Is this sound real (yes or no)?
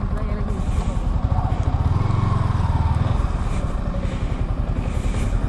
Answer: yes